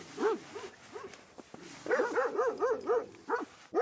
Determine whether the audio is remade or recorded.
recorded